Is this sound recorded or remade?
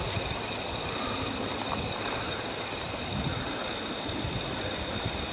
recorded